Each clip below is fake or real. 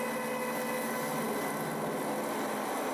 real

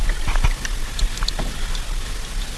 real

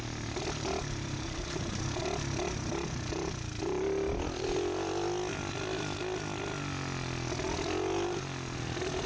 real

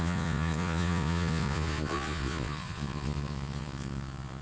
fake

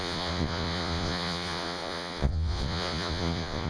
fake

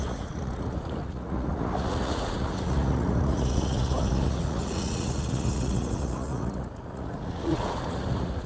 fake